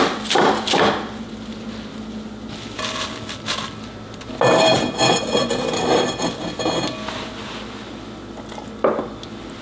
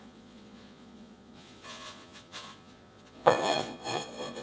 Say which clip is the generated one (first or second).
second